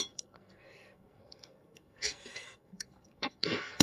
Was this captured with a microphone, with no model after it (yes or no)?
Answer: no